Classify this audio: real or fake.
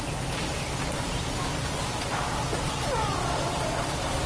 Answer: real